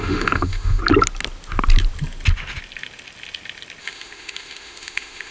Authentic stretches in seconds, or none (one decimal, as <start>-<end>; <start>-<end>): 0.8-3.8